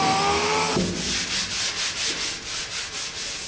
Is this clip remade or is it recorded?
recorded